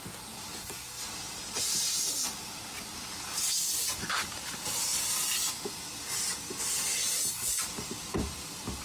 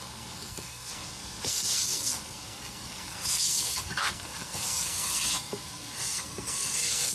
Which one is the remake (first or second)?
second